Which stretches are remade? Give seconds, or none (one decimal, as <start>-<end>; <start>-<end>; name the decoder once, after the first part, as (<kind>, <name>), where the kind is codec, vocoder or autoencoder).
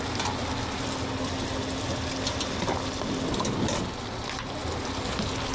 none